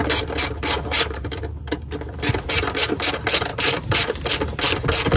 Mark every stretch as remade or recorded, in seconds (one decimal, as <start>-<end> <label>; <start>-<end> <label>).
0.0-3.1 remade; 3.1-3.5 recorded; 3.5-4.2 remade; 4.2-5.2 recorded